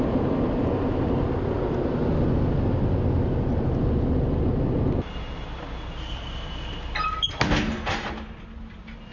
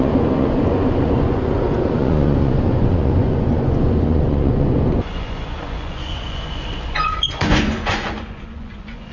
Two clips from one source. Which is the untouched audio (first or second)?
first